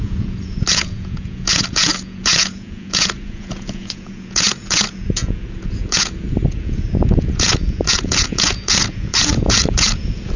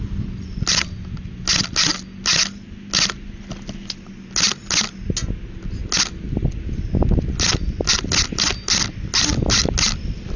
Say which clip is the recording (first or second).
second